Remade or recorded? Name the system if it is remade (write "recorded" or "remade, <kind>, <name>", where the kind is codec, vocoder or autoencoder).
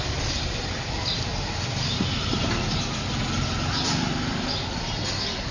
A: recorded